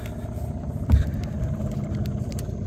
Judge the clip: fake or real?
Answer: real